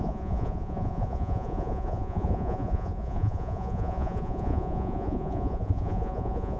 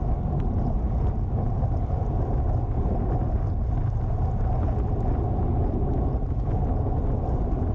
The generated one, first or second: first